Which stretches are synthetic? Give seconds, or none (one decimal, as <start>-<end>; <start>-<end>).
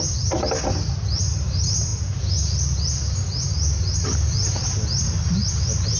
none